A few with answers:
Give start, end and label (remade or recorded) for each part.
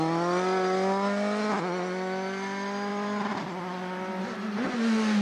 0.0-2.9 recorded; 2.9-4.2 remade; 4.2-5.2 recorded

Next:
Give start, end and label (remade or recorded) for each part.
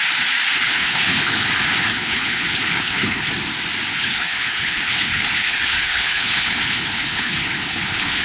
0.0-0.6 recorded; 0.6-1.5 remade; 1.5-1.9 recorded; 1.9-3.3 remade; 3.3-3.9 recorded; 3.9-8.2 remade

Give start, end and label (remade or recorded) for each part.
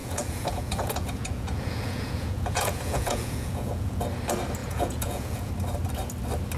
0.0-4.0 remade; 4.0-4.6 recorded; 4.6-5.5 remade; 5.5-6.6 recorded